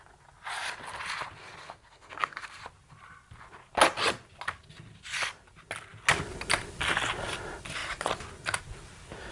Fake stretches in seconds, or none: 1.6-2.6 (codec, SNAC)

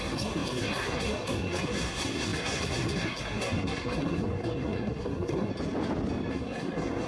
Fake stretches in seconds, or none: 0.0-5.5 (codec, SNAC); 6.3-7.1

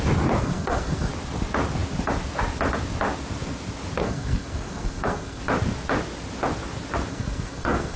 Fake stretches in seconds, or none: 0.4-1.1 (codec, SNAC); 4.0-5.4; 7.1-8.0

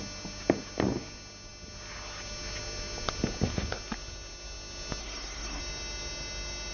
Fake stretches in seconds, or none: 5.0-5.6 (codec, SNAC)

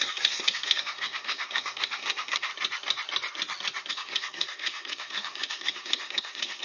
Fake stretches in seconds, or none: 0.0-2.5 (codec, SNAC); 3.9-6.6

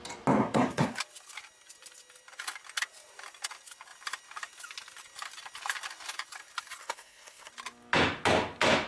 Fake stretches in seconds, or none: 0.4-1.0 (codec, SNAC); 6.8-7.5

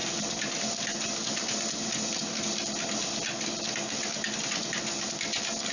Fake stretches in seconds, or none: none